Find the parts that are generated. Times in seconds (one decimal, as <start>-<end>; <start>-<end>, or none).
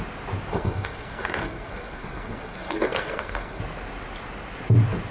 0.5-3.6